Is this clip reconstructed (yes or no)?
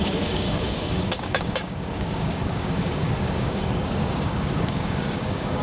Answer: yes